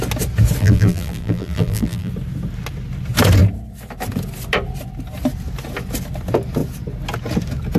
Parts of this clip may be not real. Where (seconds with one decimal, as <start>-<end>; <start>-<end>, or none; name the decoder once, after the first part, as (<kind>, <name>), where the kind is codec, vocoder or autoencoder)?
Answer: 0.6-2.1 (vocoder, BigVGAN v2)